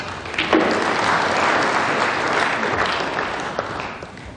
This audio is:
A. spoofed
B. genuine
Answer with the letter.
B